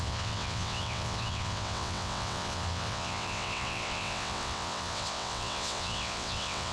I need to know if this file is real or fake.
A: fake